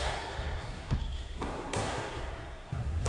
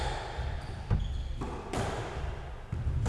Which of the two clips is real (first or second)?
second